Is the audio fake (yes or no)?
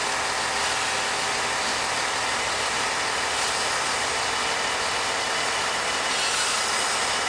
no